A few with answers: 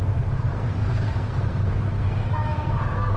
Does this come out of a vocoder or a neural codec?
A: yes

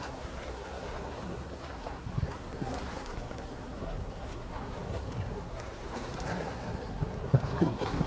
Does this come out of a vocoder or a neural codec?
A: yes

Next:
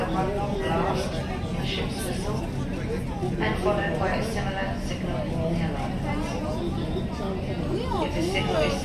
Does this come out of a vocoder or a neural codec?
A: no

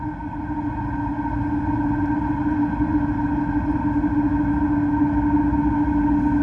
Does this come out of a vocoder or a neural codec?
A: no